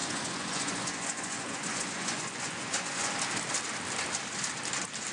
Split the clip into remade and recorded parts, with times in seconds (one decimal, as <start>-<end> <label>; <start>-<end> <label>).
0.0-3.1 remade; 3.1-5.1 recorded